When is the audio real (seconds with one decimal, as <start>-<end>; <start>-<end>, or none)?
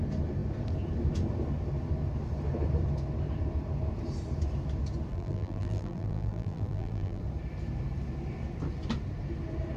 0.0-5.1; 7.2-9.8